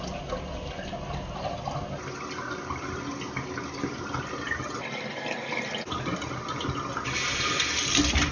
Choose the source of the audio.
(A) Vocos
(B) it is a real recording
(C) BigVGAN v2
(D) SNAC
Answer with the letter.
B